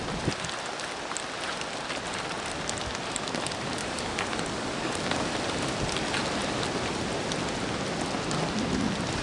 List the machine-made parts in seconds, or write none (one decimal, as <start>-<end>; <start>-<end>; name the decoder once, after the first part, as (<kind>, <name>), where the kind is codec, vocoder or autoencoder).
3.8-5.3 (codec, DAC)